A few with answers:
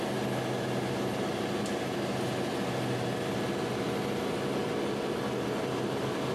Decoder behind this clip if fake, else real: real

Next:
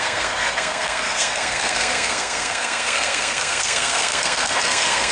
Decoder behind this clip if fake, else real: fake, codec, SNAC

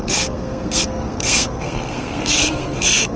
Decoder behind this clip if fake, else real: fake, codec, SNAC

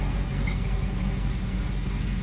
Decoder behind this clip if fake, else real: fake, codec, SNAC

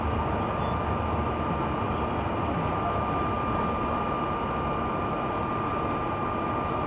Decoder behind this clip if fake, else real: real